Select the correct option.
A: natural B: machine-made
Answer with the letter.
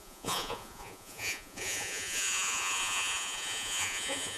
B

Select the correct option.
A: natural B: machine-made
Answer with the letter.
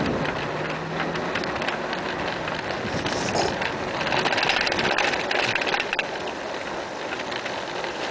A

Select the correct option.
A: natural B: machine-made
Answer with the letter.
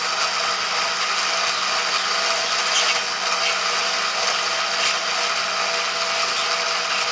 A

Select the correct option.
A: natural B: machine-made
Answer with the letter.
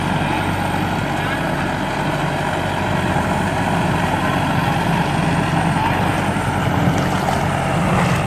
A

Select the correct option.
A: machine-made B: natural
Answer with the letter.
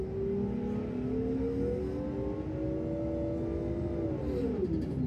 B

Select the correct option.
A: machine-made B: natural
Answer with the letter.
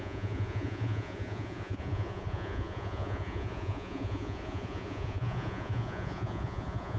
A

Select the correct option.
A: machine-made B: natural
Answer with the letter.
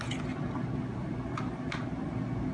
B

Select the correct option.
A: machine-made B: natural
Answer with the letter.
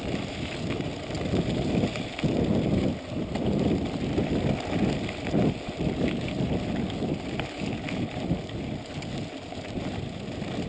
B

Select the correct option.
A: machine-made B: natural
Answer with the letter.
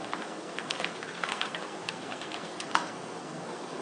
A